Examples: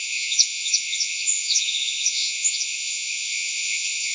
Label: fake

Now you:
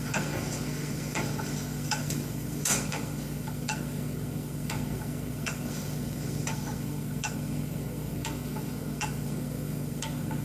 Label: fake